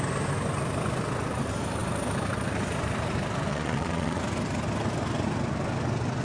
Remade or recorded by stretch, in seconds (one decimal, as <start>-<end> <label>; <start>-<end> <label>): 0.0-3.5 recorded; 3.5-4.2 remade; 4.2-6.2 recorded